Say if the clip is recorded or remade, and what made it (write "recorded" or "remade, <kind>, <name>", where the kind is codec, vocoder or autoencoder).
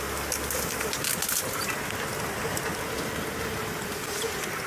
recorded